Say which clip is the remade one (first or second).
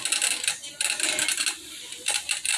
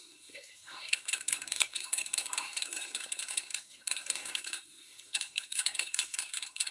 second